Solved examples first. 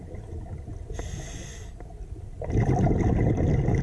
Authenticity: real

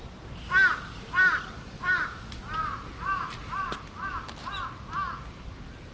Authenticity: real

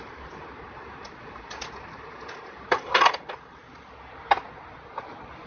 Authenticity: real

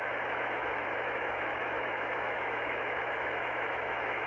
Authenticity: fake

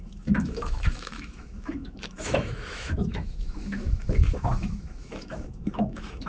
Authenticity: fake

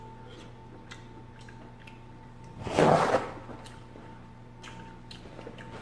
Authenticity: real